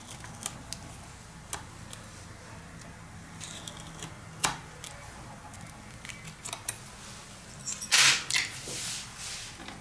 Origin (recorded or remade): recorded